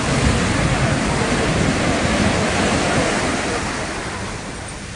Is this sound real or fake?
real